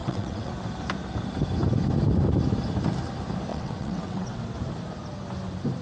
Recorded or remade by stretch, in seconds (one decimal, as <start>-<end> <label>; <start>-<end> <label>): 0.0-0.5 remade; 0.5-3.5 recorded; 3.5-4.4 remade; 4.4-5.8 recorded